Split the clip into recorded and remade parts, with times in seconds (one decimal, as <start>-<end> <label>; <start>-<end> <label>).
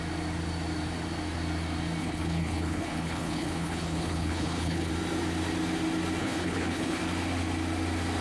0.0-2.0 recorded; 2.0-4.9 remade; 4.9-6.2 recorded; 6.2-7.0 remade; 7.0-8.2 recorded